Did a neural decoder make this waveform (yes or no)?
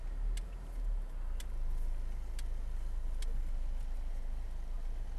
no